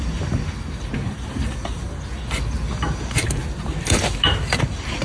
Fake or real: real